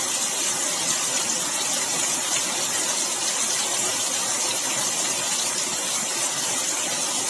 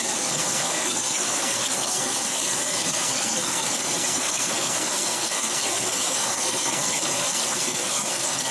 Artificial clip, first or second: second